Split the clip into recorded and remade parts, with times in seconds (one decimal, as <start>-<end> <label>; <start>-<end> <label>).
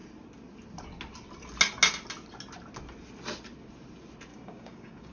0.0-4.3 recorded; 4.3-5.1 remade